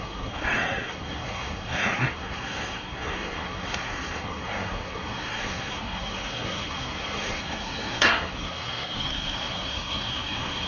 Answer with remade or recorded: remade